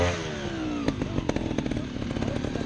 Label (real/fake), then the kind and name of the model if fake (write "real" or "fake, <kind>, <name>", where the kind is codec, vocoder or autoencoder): real